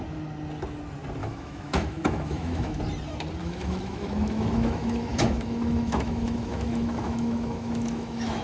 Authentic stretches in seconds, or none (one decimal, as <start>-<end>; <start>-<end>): 0.0-1.2; 2.8-3.4